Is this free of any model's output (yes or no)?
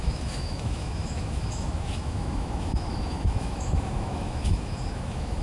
no